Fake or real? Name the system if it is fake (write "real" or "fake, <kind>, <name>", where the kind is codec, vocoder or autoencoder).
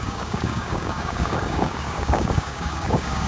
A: fake, codec, DAC